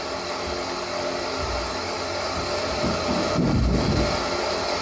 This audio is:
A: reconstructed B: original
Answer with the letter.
B